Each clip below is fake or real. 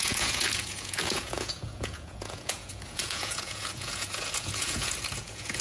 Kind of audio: fake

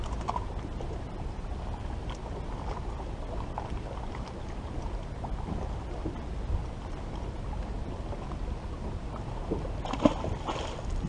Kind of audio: real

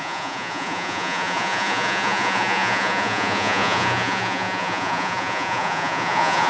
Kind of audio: fake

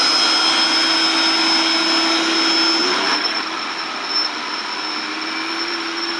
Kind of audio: real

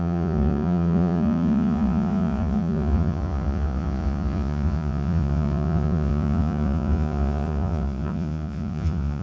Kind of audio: fake